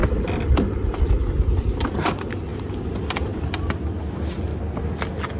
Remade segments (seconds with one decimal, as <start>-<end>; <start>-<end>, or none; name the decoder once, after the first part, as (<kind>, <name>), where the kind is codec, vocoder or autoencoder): 0.0-4.5 (vocoder, BigVGAN v2)